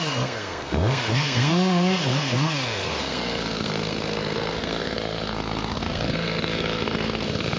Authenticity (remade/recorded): remade